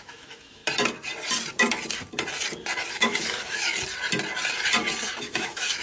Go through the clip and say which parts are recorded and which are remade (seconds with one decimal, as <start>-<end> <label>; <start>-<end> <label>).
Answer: 0.0-0.6 remade; 0.6-2.9 recorded; 2.9-3.7 remade; 3.7-5.2 recorded; 5.2-5.8 remade